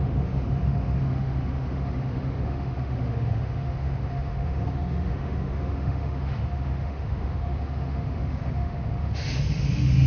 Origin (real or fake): fake